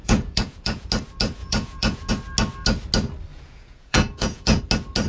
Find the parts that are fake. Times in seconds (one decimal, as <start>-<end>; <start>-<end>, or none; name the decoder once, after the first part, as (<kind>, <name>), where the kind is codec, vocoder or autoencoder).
0.0-0.9 (vocoder, Vocos); 1.4-2.1; 3.3-4.6